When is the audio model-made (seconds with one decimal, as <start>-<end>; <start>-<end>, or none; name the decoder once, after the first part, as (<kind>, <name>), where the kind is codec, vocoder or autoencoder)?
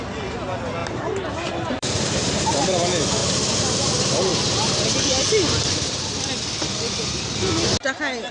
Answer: 0.8-2.4 (vocoder, BigVGAN v2); 3.2-3.9